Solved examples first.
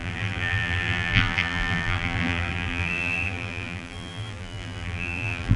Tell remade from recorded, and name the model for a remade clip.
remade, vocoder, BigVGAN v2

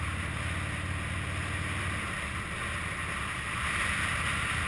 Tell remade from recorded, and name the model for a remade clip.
recorded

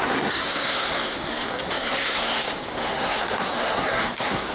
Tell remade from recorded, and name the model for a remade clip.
remade, codec, SNAC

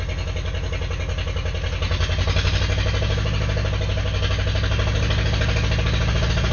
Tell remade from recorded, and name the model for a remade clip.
recorded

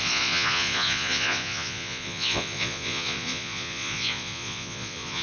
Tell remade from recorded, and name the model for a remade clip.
remade, vocoder, Vocos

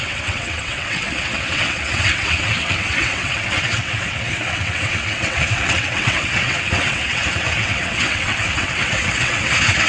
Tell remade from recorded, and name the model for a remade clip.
remade, vocoder, WaveNeXt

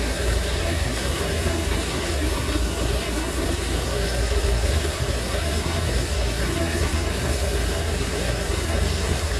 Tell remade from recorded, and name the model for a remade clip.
remade, codec, SNAC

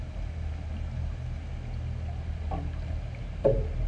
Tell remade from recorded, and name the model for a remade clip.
recorded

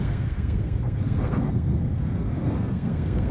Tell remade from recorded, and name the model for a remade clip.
remade, codec, SNAC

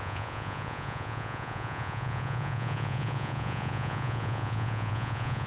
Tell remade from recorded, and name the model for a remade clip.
remade, vocoder, Vocos